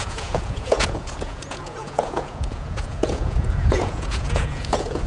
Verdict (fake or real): fake